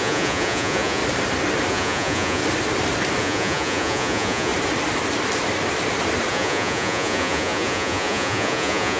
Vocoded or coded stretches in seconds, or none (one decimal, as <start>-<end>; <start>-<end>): 0.0-1.0; 1.7-2.4; 3.2-4.5; 6.3-9.0

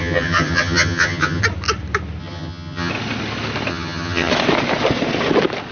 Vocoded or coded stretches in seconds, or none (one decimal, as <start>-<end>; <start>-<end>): 0.0-1.4; 2.2-2.9; 3.7-4.3